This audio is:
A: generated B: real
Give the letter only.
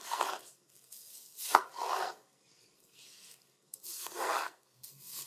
A